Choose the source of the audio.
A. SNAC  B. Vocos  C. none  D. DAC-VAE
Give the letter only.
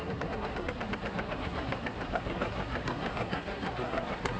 A